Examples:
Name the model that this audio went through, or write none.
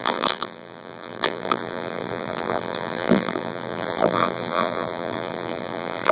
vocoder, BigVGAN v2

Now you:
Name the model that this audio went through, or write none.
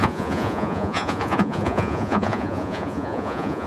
vocoder, Vocos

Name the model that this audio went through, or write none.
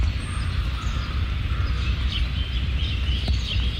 none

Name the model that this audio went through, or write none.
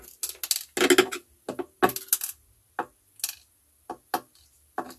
none